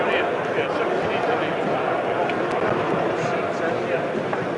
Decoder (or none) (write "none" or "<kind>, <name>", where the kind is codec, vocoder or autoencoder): none